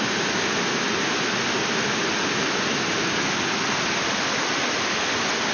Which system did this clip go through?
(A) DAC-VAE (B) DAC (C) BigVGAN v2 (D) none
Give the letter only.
D